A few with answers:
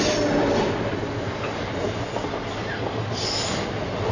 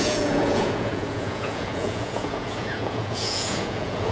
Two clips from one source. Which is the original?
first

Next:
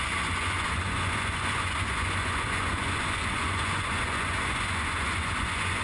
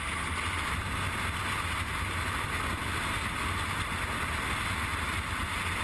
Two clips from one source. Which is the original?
second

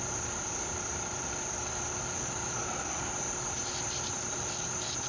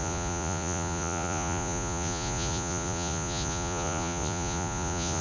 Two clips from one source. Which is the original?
first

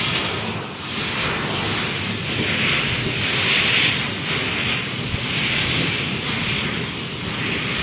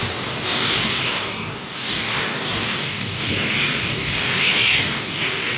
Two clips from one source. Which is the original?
first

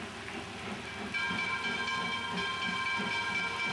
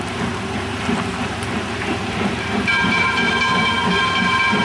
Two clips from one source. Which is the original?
first